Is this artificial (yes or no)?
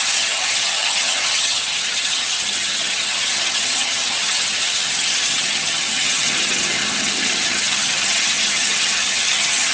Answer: yes